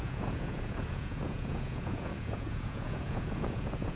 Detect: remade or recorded remade